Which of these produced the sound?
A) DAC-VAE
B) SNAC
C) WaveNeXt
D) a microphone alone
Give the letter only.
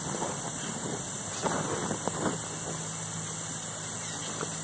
D